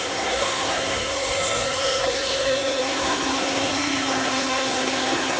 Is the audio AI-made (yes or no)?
yes